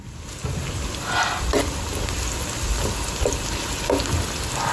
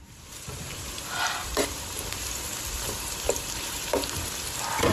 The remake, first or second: second